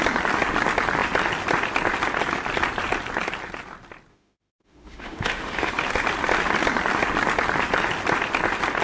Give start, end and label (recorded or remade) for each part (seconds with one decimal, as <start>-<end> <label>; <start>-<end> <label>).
0.0-4.1 recorded; 4.1-5.7 remade; 5.7-8.8 recorded